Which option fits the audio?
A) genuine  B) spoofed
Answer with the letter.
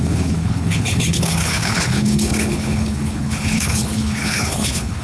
B